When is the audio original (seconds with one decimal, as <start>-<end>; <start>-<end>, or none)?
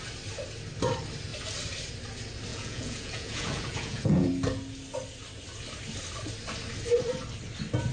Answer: 0.0-2.5; 4.3-7.9